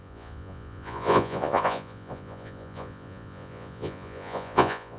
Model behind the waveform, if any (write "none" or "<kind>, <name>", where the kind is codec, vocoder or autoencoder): vocoder, Vocos